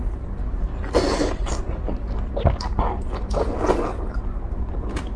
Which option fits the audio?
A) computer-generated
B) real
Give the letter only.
B